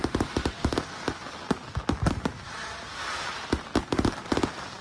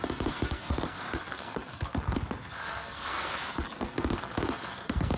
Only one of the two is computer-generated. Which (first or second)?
second